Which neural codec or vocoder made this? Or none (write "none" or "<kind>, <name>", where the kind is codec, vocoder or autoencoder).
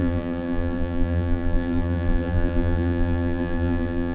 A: vocoder, BigVGAN v2